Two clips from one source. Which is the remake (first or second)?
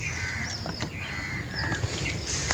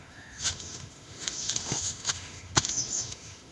second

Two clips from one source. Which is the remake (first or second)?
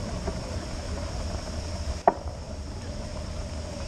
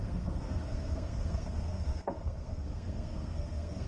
second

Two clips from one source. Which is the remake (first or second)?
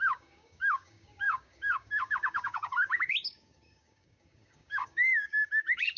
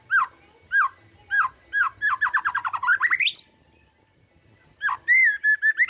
first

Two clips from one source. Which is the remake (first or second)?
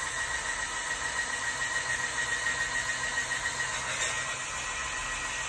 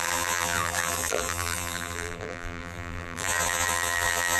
second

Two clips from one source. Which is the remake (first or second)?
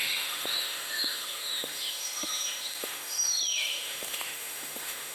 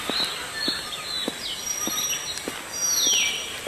first